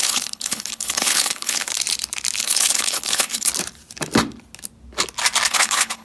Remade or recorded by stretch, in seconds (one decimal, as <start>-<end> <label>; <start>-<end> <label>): 0.0-1.7 remade; 1.7-2.4 recorded; 2.4-3.5 remade; 3.5-5.5 recorded; 5.5-6.0 remade